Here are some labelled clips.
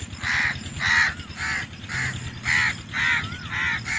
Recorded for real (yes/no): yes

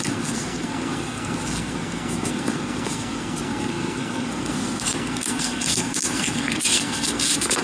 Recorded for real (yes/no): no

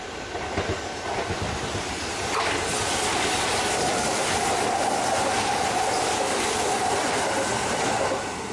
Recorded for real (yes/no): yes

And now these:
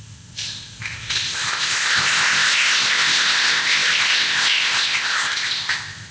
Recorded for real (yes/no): no